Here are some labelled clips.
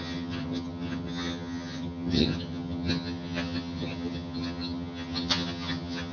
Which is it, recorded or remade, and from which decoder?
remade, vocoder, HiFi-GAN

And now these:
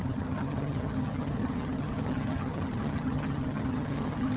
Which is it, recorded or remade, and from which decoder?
remade, vocoder, HiFi-GAN